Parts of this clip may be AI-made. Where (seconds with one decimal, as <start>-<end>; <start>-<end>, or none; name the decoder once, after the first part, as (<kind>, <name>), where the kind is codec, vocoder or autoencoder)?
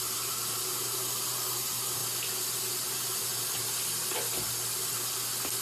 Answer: 0.0-2.0 (vocoder, BigVGAN v2); 2.6-3.3